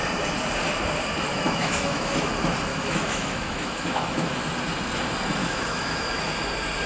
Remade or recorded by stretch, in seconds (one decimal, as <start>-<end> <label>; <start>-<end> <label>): 0.0-1.3 recorded; 1.3-2.3 remade; 2.3-2.7 recorded; 2.7-4.4 remade; 4.4-5.4 recorded; 5.4-6.2 remade; 6.2-6.9 recorded